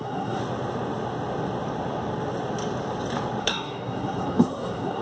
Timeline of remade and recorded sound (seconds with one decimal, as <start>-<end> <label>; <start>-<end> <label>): 0.0-0.4 remade; 0.4-3.4 recorded; 3.4-5.0 remade